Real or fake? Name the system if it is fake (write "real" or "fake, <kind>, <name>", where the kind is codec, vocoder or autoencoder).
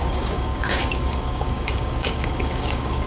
fake, codec, DAC